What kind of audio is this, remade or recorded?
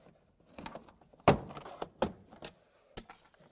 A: recorded